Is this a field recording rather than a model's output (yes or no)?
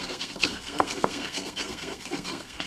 no